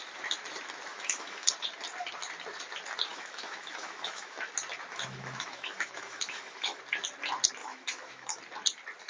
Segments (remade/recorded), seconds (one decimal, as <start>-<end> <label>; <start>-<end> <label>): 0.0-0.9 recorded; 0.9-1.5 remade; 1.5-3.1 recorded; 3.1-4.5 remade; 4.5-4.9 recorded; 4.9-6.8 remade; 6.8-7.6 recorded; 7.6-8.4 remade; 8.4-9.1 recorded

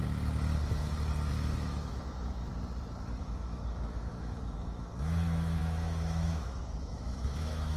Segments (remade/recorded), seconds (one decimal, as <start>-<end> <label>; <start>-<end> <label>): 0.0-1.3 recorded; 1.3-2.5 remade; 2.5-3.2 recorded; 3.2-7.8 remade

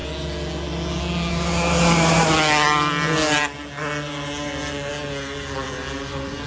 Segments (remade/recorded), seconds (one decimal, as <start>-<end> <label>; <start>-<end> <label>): 0.0-6.5 recorded